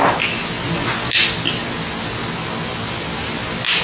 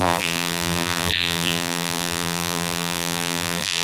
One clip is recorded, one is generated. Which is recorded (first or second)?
first